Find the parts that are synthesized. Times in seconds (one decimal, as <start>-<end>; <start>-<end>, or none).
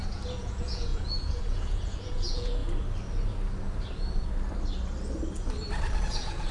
0.0-2.6; 6.0-6.5